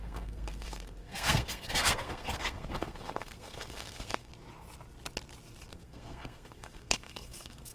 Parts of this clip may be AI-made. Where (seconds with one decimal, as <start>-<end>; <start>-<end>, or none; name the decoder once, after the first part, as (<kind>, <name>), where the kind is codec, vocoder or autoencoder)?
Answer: 0.0-4.3 (codec, SNAC); 5.7-7.7